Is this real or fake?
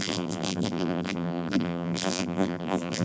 fake